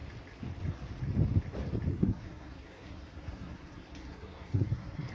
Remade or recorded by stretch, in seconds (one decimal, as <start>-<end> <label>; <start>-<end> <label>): 0.0-1.9 recorded; 1.9-5.1 remade